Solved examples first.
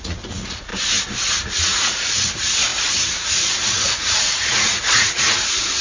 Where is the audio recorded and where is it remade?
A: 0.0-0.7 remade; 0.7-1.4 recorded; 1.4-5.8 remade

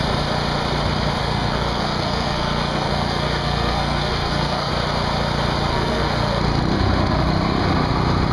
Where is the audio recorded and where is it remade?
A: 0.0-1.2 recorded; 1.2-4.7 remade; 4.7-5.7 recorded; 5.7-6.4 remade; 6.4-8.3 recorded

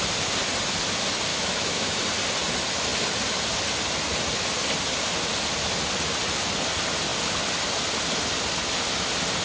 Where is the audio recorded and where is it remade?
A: 0.0-1.3 recorded; 1.3-2.0 remade; 2.0-9.4 recorded